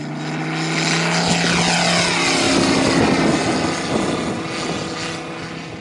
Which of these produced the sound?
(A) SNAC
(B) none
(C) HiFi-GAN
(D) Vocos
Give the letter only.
B